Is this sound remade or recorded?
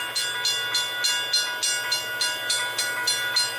recorded